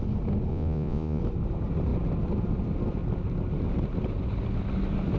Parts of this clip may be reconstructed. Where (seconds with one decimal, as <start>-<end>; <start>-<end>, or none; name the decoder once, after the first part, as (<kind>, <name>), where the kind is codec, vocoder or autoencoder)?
0.5-1.2 (vocoder, Vocos)